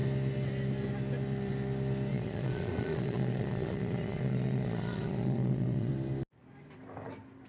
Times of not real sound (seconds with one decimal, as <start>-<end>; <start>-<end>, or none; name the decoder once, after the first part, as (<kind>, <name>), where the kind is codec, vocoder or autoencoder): 2.1-5.9 (vocoder, Vocos)